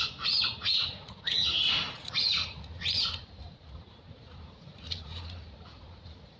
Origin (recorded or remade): remade